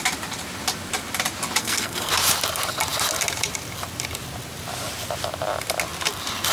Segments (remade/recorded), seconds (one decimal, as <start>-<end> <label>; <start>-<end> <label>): 0.0-1.6 recorded; 1.6-2.1 remade; 2.1-6.5 recorded